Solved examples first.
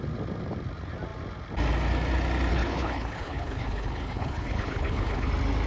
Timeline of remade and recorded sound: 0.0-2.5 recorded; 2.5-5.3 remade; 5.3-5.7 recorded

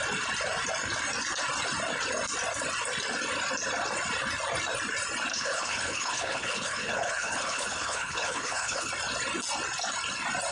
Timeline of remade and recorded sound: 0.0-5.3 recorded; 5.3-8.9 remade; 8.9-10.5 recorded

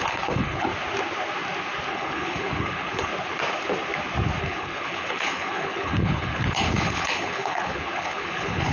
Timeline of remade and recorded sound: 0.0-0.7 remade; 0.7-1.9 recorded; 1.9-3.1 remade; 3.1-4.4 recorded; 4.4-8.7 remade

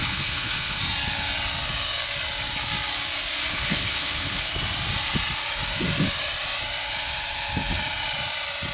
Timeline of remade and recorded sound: 0.0-0.8 remade; 0.8-3.5 recorded; 3.5-4.5 remade; 4.5-8.7 recorded

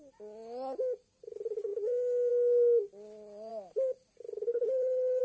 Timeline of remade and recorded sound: 0.0-4.5 recorded; 4.5-5.2 remade

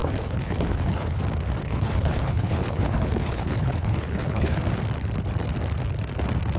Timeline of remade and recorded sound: 0.0-1.2 remade; 1.2-1.6 recorded; 1.6-4.6 remade; 4.6-6.6 recorded

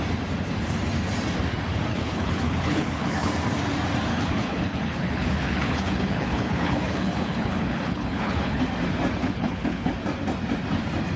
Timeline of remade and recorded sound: 0.0-1.9 recorded; 1.9-3.3 remade; 3.3-4.1 recorded; 4.1-8.6 remade; 8.6-9.2 recorded; 9.2-9.9 remade; 9.9-11.2 recorded

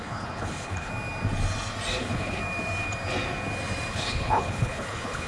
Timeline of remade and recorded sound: 0.0-0.9 remade; 0.9-2.0 recorded; 2.0-2.4 remade; 2.4-3.9 recorded; 3.9-5.3 remade